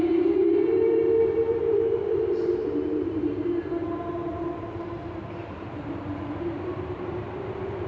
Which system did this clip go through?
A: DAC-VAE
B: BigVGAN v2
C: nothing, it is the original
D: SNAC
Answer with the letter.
B